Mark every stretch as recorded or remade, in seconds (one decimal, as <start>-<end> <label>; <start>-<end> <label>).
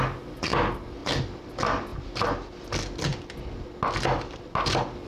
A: 0.0-5.1 recorded